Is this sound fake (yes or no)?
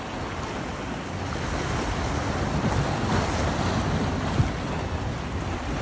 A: no